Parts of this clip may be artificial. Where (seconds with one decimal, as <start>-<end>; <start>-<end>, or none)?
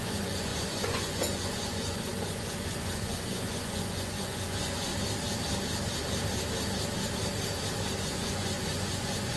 0.0-4.9; 8.0-9.4